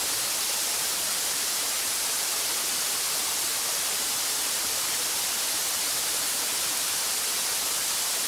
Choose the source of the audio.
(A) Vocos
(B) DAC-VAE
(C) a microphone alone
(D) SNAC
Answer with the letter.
C